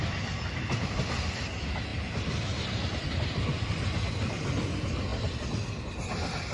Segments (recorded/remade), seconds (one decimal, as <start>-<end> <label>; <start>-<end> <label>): 0.0-1.9 recorded; 1.9-4.1 remade; 4.1-5.1 recorded; 5.1-5.8 remade; 5.8-6.5 recorded

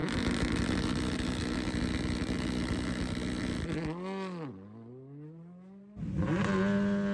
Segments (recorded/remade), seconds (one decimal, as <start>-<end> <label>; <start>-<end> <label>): 0.0-7.1 recorded

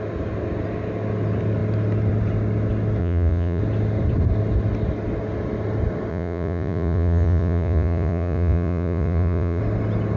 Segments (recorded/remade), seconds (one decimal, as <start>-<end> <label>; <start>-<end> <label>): 0.0-3.0 recorded; 3.0-3.6 remade; 3.6-6.1 recorded; 6.1-9.6 remade; 9.6-10.2 recorded

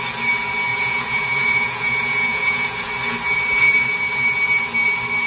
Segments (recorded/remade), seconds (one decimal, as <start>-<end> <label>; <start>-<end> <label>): 0.0-0.7 recorded; 0.7-2.9 remade; 2.9-5.3 recorded